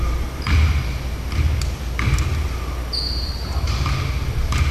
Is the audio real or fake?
real